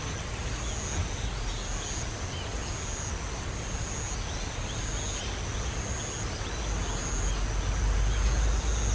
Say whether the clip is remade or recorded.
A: recorded